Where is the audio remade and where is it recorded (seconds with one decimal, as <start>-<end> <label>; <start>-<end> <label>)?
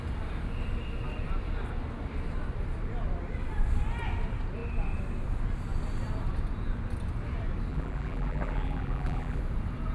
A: 0.0-7.7 recorded; 7.7-9.4 remade; 9.4-9.9 recorded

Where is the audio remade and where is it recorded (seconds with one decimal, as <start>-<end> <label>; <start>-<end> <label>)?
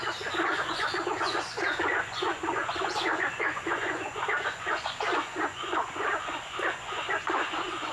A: 0.0-7.9 remade